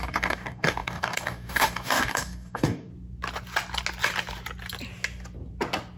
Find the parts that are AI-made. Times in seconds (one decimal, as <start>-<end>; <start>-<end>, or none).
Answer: 0.0-2.9